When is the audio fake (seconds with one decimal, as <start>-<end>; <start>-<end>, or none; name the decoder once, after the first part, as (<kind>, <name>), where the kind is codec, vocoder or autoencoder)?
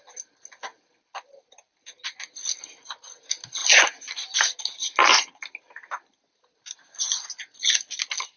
none